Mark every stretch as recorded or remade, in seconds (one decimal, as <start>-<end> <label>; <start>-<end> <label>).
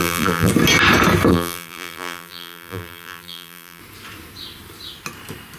0.0-0.5 remade; 0.5-1.3 recorded; 1.3-3.8 remade; 3.8-5.6 recorded